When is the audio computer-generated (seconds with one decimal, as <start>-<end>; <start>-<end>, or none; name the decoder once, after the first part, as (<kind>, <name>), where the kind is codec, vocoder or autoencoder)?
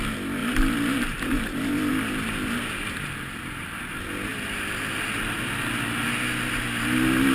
none